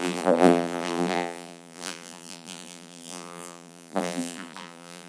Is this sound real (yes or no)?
no